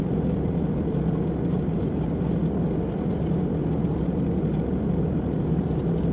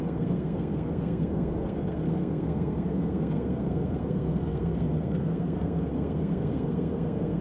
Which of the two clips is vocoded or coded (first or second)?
second